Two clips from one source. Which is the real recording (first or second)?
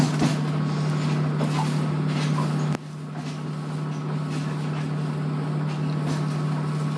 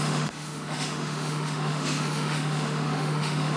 first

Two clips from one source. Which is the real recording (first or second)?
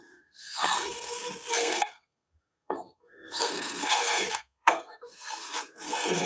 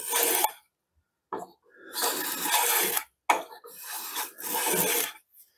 second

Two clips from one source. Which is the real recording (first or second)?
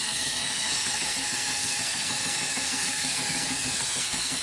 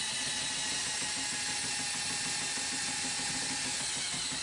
second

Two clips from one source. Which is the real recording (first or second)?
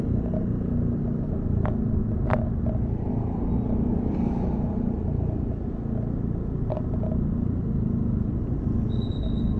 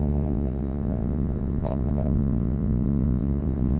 first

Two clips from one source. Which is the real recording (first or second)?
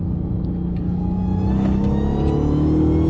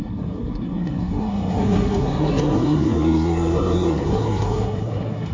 first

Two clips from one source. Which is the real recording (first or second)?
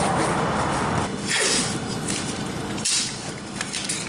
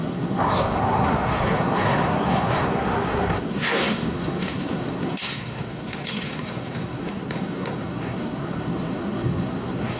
first